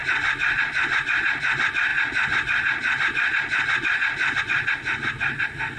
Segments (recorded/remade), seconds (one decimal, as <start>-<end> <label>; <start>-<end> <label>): 0.0-0.6 remade; 0.6-5.8 recorded